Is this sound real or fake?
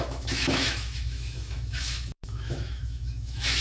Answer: fake